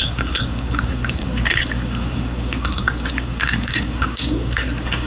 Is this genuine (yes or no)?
no